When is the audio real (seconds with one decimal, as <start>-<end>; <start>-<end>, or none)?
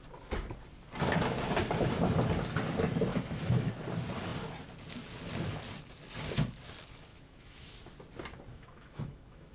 0.0-3.1; 3.7-7.1; 7.8-8.5